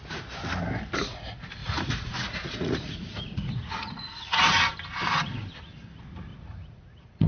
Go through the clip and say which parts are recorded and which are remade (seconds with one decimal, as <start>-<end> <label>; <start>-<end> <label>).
0.0-1.6 recorded; 1.6-4.4 remade; 4.4-6.3 recorded; 6.3-7.3 remade